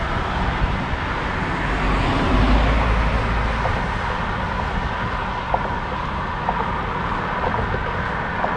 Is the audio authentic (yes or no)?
yes